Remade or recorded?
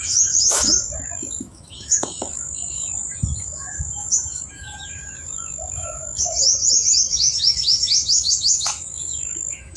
remade